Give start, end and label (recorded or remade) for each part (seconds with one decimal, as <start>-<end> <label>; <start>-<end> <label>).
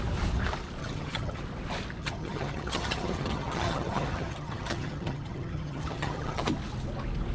0.0-0.8 recorded; 0.8-1.4 remade; 1.4-2.0 recorded; 2.0-6.4 remade; 6.4-7.3 recorded